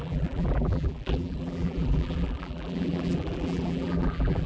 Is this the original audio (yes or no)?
no